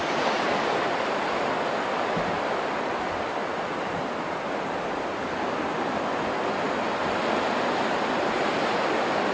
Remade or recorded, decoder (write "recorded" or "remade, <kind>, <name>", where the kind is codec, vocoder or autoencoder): recorded